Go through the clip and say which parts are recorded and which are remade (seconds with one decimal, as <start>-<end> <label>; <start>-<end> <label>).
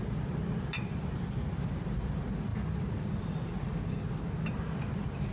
0.0-5.3 recorded